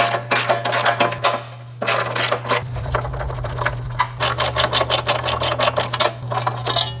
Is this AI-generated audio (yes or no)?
no